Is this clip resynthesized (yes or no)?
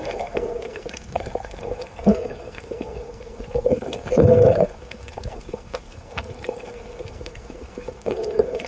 yes